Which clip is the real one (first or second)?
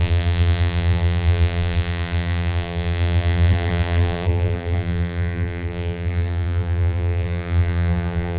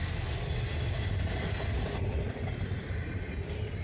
second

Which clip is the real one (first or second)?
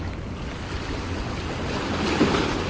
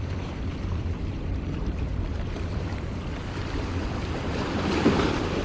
first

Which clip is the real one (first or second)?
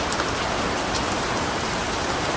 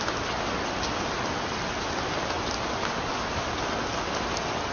second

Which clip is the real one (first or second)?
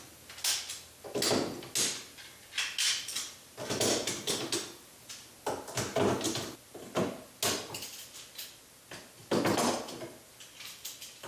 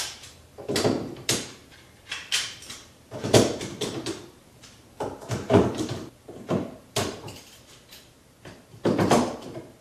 first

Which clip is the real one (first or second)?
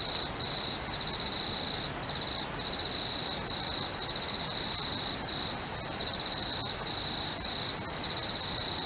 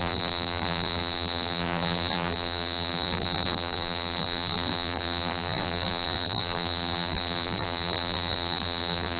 first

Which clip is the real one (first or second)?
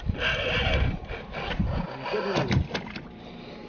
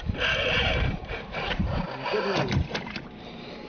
first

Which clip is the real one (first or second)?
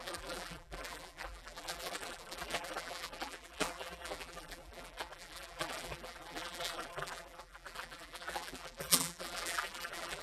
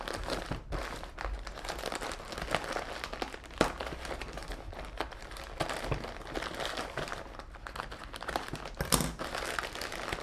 second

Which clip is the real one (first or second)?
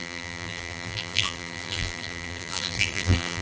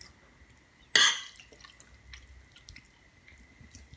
second